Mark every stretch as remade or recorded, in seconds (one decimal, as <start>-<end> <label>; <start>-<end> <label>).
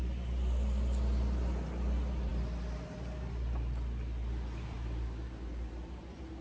0.0-6.4 recorded